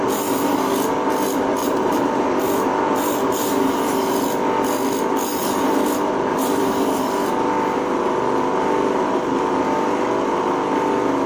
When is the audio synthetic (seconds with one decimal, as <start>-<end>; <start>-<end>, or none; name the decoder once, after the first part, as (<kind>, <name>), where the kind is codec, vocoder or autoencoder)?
1.6-2.3 (vocoder, BigVGAN v2)